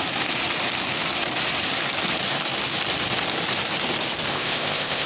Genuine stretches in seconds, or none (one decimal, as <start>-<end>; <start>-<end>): 0.0-4.3